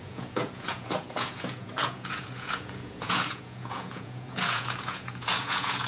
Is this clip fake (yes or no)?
yes